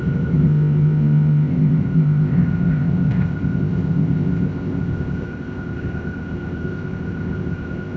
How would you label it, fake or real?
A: fake